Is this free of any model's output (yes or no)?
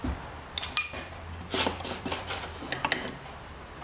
yes